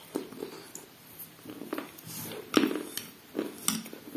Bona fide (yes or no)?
yes